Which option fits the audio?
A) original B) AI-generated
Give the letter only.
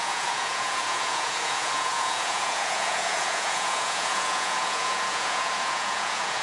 B